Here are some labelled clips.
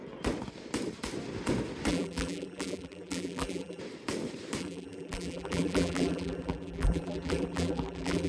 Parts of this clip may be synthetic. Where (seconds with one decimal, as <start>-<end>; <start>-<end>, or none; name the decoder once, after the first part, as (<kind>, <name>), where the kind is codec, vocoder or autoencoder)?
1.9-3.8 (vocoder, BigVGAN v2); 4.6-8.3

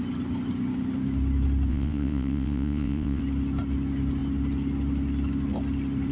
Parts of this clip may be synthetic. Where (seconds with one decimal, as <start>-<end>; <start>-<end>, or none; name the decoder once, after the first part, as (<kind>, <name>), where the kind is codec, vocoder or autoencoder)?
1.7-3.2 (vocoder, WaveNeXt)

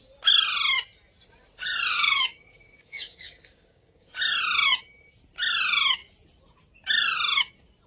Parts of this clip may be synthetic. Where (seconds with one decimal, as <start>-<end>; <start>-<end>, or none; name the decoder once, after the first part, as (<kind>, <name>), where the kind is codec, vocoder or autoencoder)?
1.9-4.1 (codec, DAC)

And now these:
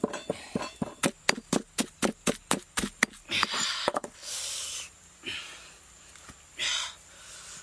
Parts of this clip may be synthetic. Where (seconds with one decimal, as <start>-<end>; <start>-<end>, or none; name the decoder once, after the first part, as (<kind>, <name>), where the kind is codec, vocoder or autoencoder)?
3.8-4.3 (codec, HILCodec)

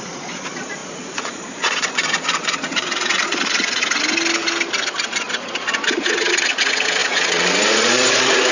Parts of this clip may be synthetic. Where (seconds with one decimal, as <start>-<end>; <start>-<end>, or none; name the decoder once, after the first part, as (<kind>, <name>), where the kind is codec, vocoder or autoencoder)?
0.0-3.8 (vocoder, Vocos); 4.9-8.5